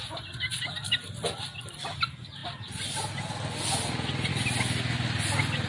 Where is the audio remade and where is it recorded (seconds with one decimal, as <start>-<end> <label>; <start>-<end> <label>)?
0.0-5.7 recorded